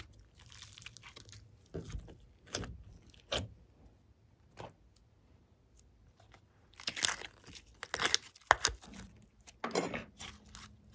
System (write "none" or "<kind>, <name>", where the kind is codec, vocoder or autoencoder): none